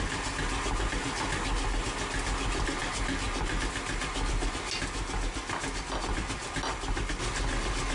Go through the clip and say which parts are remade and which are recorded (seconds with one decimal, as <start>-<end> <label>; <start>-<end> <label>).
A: 0.0-7.9 recorded